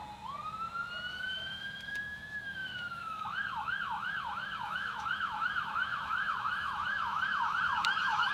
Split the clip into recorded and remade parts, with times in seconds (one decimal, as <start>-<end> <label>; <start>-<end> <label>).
0.0-1.1 recorded; 1.1-8.3 remade